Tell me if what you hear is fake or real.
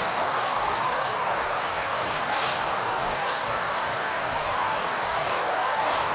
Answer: fake